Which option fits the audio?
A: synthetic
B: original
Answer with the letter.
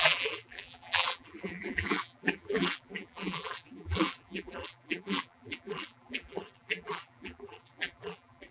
A